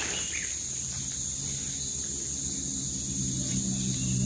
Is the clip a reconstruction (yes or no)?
no